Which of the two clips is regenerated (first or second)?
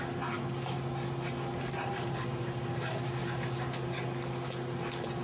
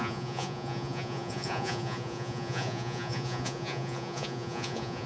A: second